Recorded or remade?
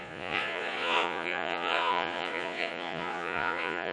remade